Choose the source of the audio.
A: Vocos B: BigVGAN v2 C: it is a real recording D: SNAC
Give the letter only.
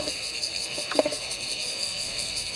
D